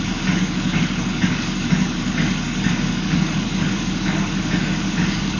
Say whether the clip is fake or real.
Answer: fake